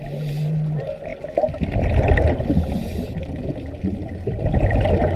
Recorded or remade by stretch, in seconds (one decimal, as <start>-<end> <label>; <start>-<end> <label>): 0.0-5.2 recorded